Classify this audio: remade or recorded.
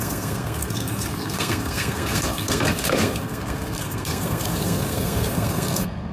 remade